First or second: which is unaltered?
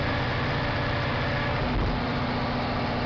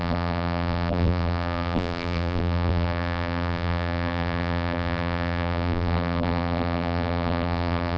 first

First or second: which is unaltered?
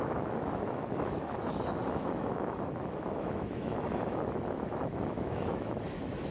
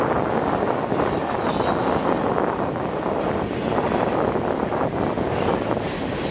second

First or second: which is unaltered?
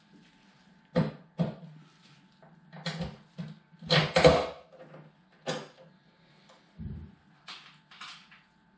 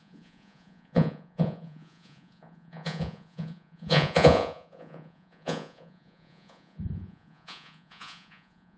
first